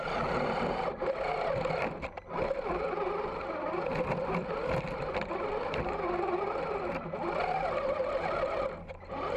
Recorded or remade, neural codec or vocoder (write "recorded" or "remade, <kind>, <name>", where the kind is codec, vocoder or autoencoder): recorded